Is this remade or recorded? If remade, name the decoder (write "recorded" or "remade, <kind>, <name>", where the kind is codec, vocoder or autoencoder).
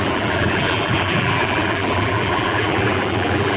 remade, vocoder, BigVGAN v2